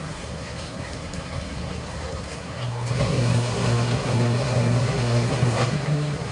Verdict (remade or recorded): remade